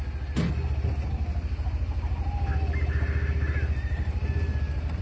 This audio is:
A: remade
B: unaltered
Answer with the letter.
B